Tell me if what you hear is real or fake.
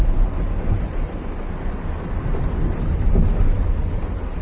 real